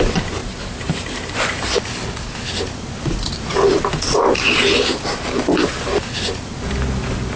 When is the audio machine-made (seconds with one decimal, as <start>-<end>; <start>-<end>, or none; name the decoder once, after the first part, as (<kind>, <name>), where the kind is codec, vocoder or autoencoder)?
0.4-1.7 (vocoder, BigVGAN v2)